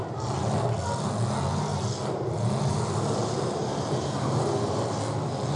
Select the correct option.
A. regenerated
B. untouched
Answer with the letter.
B